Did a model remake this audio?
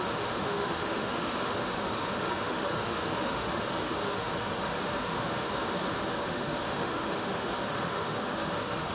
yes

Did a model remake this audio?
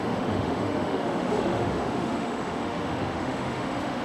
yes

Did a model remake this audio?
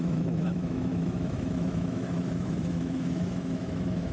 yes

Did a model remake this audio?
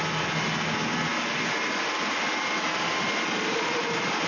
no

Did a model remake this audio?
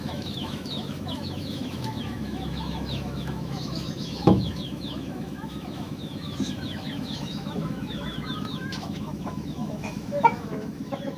yes